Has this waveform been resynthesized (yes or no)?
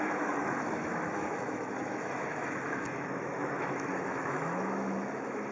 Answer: yes